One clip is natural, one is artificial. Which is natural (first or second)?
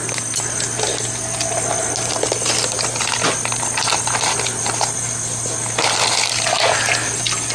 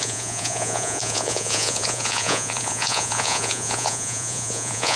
first